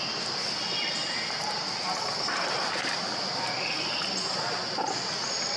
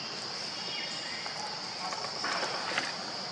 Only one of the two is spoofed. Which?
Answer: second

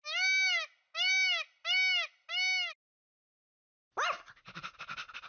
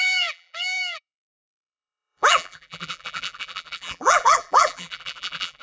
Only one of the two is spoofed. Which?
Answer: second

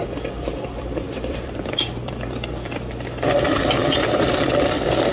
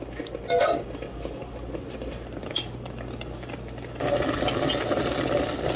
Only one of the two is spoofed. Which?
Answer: first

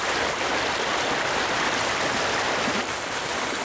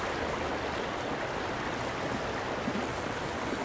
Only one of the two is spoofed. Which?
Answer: first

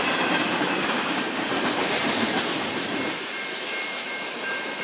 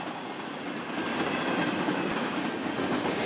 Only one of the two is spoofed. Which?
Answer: first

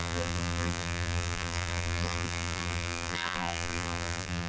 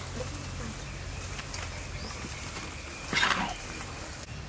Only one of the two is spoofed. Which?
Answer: first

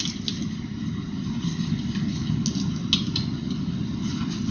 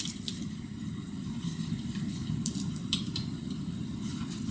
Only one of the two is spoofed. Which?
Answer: second